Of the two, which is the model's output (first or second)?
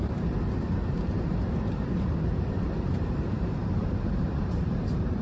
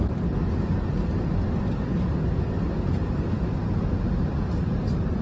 first